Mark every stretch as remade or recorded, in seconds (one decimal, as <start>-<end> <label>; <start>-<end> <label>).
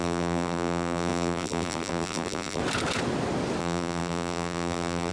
0.0-2.6 remade; 2.6-3.6 recorded; 3.6-5.1 remade